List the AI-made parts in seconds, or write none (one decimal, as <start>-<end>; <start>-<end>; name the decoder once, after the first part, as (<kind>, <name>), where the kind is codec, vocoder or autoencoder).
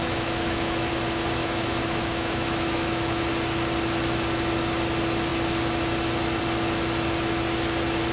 0.0-0.9 (autoencoder, DAC-VAE); 1.4-3.2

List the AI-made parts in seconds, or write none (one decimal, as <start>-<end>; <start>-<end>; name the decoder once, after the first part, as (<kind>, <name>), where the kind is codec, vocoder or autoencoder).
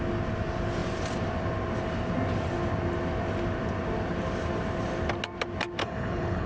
5.8-6.5 (codec, HILCodec)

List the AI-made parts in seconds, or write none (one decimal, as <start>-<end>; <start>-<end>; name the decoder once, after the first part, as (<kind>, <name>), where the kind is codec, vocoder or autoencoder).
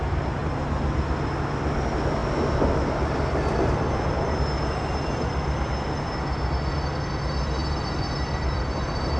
0.4-1.0 (vocoder, BigVGAN v2); 7.6-8.6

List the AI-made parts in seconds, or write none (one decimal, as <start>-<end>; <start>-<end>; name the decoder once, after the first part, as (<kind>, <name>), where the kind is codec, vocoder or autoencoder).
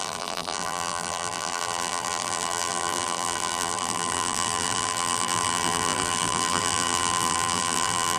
0.0-8.2 (vocoder, BigVGAN v2)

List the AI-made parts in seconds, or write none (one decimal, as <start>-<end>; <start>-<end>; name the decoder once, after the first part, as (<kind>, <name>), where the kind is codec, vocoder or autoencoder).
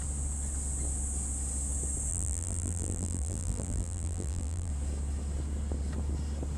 2.1-4.7 (vocoder, BigVGAN v2)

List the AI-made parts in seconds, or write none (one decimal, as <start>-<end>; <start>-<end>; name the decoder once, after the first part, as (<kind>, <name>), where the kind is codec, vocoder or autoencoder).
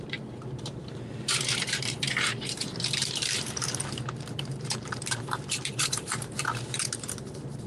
0.0-7.7 (vocoder, BigVGAN v2)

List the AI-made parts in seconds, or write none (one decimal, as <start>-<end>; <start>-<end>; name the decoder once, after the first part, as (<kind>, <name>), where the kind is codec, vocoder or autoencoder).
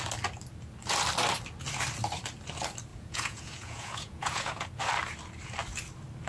2.9-4.7 (vocoder, Vocos)